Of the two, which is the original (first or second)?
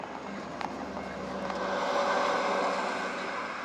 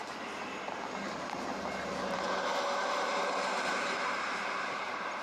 first